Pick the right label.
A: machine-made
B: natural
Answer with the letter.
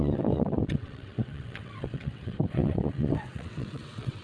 A